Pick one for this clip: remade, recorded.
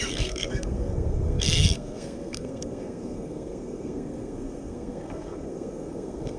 remade